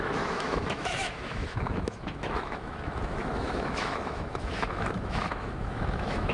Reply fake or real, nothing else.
fake